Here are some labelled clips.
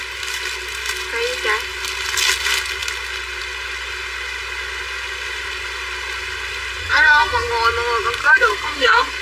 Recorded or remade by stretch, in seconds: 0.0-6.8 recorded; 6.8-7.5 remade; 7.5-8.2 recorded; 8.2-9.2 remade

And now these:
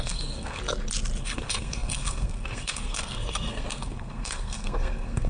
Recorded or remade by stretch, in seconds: 0.0-0.6 remade; 0.6-1.2 recorded; 1.2-5.3 remade

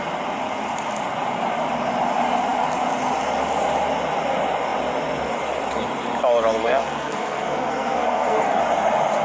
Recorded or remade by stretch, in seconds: 0.0-6.6 recorded; 6.6-8.6 remade; 8.6-9.2 recorded